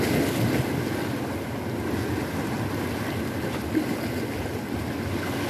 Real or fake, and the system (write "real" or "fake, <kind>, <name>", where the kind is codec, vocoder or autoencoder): real